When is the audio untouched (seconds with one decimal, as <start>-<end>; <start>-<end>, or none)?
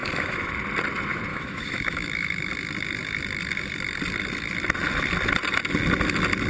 0.5-1.3; 2.5-6.5